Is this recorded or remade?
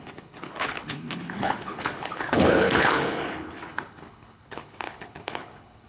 remade